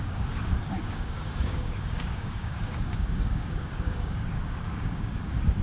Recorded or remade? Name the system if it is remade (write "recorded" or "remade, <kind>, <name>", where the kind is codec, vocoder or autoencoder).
remade, codec, DAC